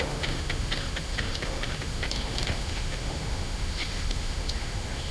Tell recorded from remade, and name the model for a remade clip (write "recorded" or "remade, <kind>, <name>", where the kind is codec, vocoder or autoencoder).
remade, autoencoder, DAC-VAE